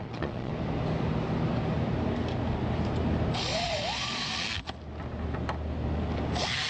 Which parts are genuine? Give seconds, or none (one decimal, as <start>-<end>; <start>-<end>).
0.5-3.5; 4.3-6.7